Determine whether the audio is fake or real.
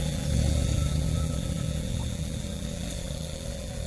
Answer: fake